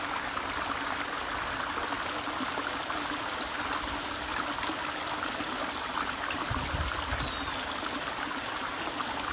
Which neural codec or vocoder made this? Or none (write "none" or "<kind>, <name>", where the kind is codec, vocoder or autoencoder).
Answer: none